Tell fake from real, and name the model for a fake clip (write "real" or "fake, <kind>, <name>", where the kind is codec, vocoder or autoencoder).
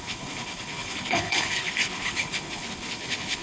fake, codec, HILCodec